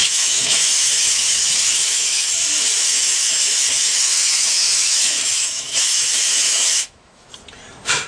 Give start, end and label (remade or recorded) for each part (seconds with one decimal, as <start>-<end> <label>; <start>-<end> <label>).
0.0-2.3 remade; 2.3-2.8 recorded; 2.8-7.3 remade; 7.3-8.1 recorded